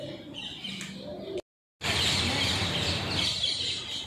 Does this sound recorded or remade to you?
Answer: recorded